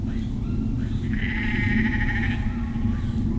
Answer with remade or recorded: recorded